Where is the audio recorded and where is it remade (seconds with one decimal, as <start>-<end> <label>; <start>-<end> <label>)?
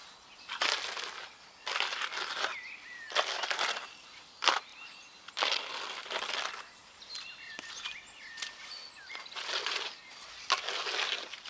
0.0-4.7 recorded; 4.7-9.5 remade; 9.5-11.5 recorded